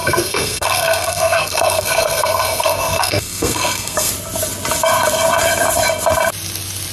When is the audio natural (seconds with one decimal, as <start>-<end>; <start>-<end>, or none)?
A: 4.1-6.9